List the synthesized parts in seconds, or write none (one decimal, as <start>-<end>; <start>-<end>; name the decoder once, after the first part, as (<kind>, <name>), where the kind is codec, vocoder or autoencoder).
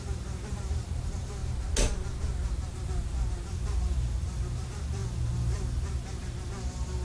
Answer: 0.0-1.4 (vocoder, BigVGAN v2); 2.7-7.0